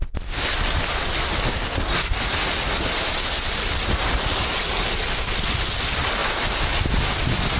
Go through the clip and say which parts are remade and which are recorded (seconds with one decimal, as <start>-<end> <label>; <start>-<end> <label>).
0.0-1.5 recorded; 1.5-2.1 remade; 2.1-7.6 recorded